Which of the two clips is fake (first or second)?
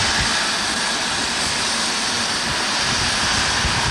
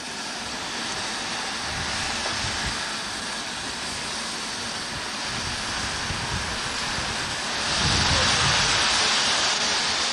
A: second